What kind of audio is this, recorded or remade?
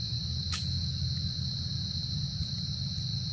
recorded